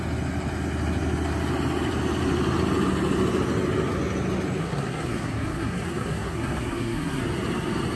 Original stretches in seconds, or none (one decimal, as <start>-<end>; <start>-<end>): 0.0-4.6; 7.2-8.0